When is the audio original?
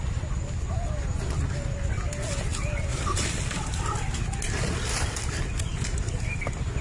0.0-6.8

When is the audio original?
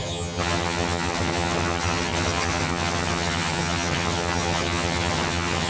none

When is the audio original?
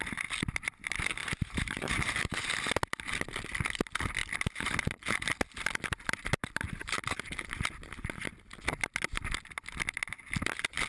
0.0-1.2; 2.4-6.8; 7.6-10.9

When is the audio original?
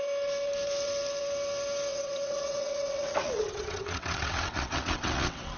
0.0-1.9